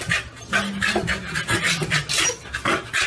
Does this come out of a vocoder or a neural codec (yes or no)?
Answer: no